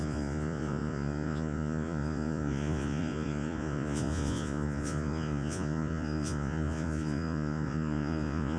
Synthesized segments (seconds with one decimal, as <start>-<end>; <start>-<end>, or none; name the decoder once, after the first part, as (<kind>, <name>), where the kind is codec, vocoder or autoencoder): 0.0-8.6 (vocoder, Vocos)

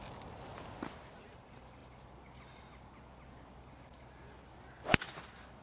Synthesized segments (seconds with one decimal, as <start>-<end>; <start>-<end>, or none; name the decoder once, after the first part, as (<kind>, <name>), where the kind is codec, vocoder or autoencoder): 0.0-0.5 (vocoder, BigVGAN v2); 1.2-5.6

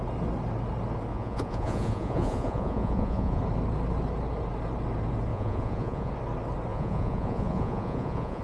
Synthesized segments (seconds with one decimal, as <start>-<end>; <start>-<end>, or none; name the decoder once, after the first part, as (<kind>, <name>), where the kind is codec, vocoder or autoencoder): 1.1-3.4 (vocoder, Vocos); 5.3-6.1; 6.7-8.4